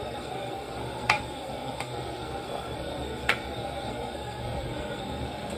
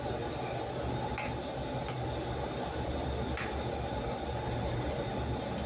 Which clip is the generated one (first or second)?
first